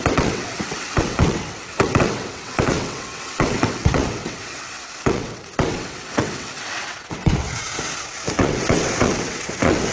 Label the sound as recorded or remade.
remade